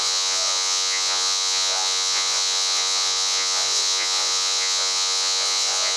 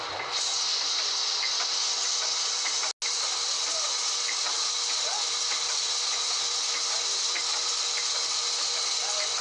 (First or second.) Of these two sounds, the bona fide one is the second